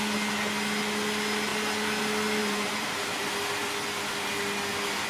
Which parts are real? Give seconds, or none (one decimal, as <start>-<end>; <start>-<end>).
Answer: 0.0-2.4; 3.2-5.1